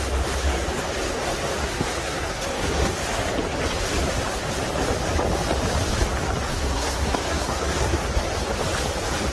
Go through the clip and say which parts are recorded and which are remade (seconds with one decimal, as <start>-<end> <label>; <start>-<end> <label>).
0.0-1.6 recorded; 1.6-2.9 remade; 2.9-6.5 recorded; 6.5-8.1 remade; 8.1-9.3 recorded